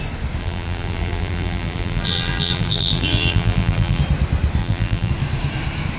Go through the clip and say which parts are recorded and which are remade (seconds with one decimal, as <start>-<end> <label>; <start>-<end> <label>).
0.0-0.4 recorded; 0.4-4.0 remade; 4.0-4.6 recorded; 4.6-5.1 remade; 5.1-6.0 recorded